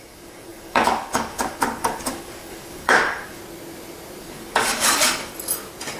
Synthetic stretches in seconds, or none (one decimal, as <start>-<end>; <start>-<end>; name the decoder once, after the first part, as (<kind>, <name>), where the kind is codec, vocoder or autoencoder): 0.0-3.4 (codec, DAC); 4.2-5.3